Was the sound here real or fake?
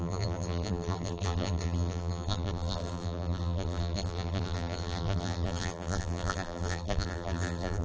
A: fake